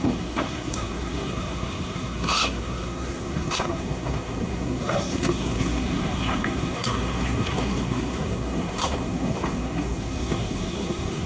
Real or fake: fake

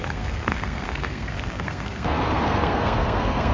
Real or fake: fake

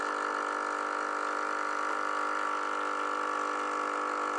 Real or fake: real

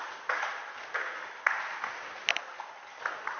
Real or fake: real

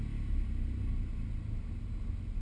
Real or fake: real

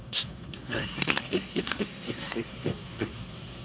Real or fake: fake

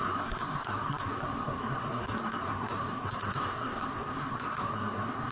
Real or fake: fake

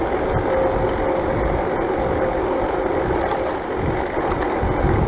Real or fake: real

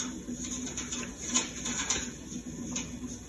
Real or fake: real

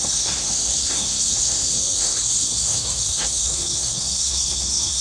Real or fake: fake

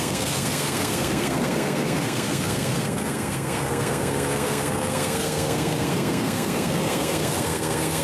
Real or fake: fake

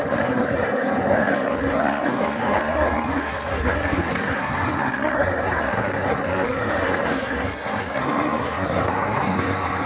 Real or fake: fake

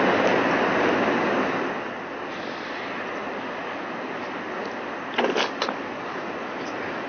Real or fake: real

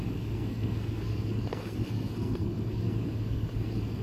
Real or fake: fake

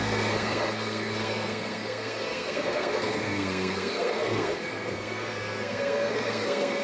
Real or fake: fake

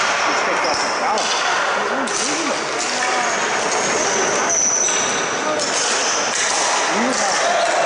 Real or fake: real